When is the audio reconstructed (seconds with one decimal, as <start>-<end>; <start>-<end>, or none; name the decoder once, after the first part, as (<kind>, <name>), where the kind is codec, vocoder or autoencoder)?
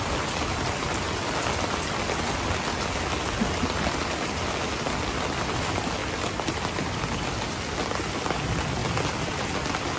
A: none